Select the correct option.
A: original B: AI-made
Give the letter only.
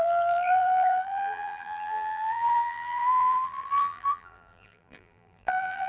B